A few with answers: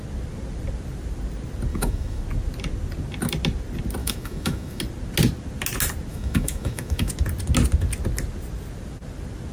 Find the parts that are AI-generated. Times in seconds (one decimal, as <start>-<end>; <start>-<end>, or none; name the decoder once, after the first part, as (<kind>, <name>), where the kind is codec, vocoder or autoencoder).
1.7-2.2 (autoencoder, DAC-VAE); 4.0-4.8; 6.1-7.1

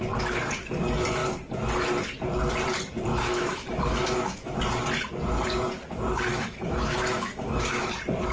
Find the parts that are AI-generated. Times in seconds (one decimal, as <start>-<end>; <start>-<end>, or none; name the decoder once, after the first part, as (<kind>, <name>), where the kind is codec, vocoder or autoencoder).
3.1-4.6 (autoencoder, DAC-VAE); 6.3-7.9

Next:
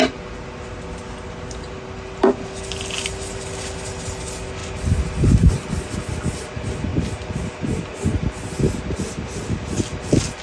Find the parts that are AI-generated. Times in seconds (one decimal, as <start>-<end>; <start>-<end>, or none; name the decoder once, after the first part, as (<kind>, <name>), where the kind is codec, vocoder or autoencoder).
none

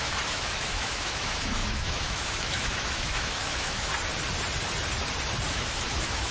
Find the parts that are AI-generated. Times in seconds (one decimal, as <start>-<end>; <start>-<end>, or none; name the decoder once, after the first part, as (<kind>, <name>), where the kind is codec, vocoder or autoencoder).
0.0-3.9 (autoencoder, DAC-VAE); 5.5-6.3

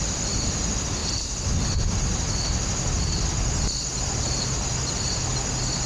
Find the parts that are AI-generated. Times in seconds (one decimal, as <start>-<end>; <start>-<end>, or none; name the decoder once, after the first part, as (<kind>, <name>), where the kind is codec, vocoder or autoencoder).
none